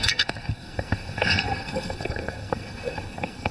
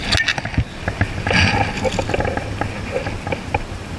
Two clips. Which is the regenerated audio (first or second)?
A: first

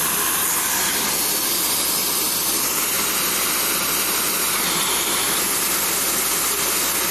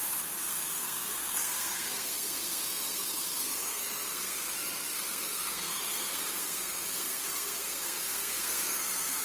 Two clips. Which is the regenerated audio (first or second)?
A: second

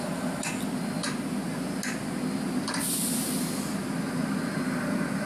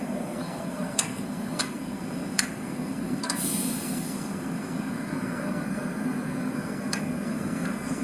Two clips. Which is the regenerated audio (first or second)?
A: second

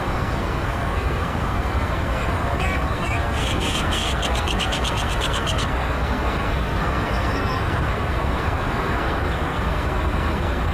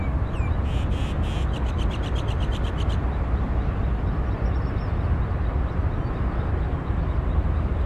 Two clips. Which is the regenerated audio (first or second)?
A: first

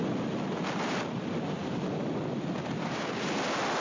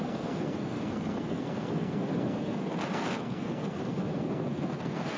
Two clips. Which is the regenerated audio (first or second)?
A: second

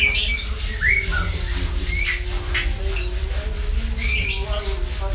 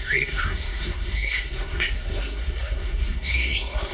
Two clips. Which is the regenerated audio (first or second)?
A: second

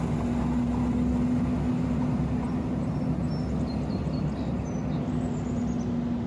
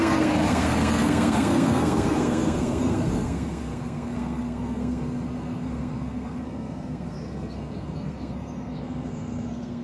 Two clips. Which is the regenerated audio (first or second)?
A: second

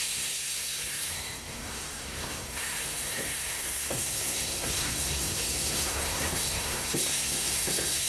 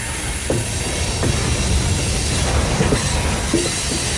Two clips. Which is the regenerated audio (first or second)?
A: first